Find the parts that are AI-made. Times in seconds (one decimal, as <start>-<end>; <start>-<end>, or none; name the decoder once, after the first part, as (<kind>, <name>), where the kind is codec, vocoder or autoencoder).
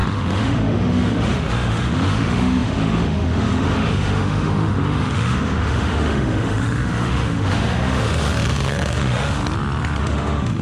0.0-9.4 (autoencoder, DAC-VAE); 10.0-10.6